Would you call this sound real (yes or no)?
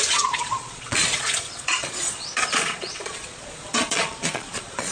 no